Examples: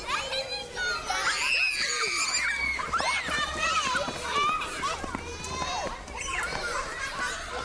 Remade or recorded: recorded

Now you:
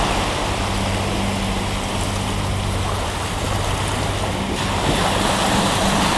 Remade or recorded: recorded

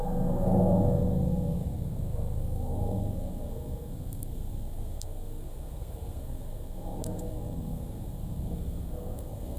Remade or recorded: remade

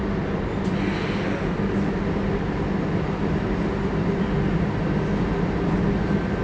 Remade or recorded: recorded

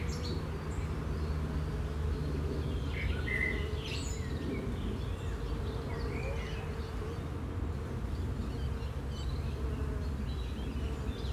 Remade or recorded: recorded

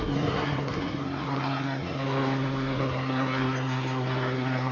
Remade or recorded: remade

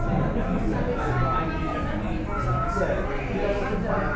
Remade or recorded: recorded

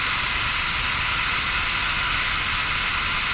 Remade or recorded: recorded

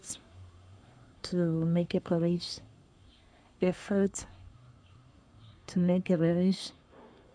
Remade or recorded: remade